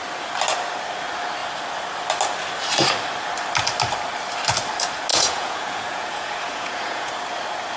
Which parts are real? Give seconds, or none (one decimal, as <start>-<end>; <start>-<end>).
0.0-5.1; 7.1-7.8